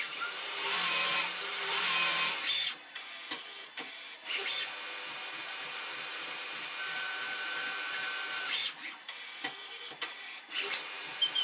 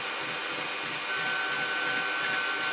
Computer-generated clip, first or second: first